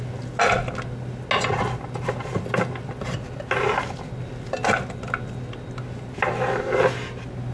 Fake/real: real